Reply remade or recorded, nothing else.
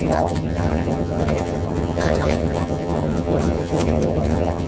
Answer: remade